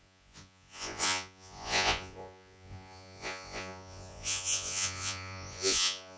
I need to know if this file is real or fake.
fake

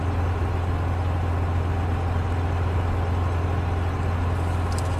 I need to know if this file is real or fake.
real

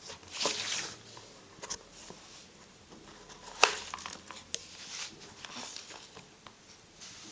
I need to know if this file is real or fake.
real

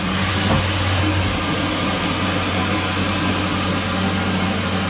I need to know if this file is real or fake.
real